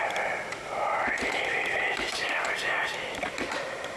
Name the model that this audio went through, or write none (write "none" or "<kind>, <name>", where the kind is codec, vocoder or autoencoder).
none